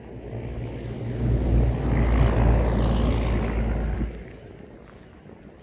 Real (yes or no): yes